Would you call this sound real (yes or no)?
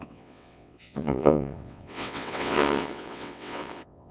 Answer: no